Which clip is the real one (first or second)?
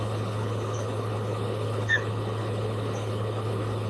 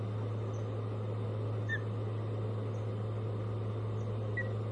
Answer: second